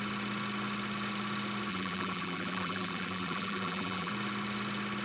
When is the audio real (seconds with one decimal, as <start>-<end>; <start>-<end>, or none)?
0.0-1.7; 4.1-5.0

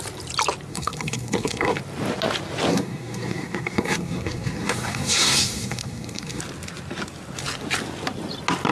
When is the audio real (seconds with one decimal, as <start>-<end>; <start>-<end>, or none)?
0.0-0.7; 1.8-2.7; 6.4-8.7

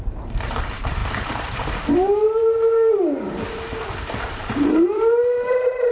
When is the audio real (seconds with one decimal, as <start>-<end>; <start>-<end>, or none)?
none

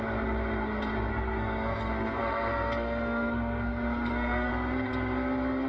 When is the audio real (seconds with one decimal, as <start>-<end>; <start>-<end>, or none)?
0.0-1.1; 4.5-5.7